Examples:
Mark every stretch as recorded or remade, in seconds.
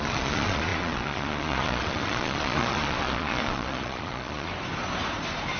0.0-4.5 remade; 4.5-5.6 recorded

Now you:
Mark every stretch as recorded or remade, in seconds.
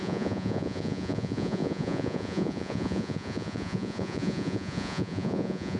0.0-5.8 remade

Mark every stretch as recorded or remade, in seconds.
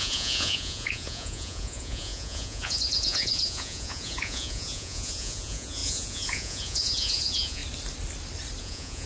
0.0-7.6 remade; 7.6-8.6 recorded; 8.6-9.1 remade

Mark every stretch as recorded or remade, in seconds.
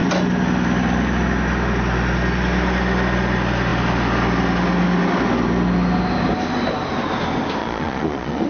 0.0-7.6 recorded; 7.6-8.5 remade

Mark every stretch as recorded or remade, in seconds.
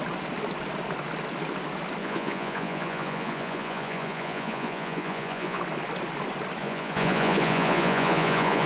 0.0-2.0 recorded; 2.0-5.6 remade; 5.6-6.6 recorded; 6.6-8.7 remade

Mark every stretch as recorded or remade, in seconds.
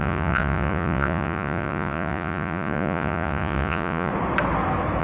0.0-4.1 remade; 4.1-5.0 recorded